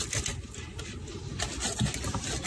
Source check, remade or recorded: recorded